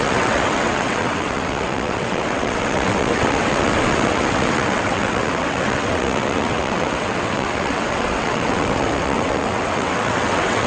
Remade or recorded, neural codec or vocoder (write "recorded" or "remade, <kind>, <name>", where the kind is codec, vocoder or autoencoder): remade, vocoder, WaveNeXt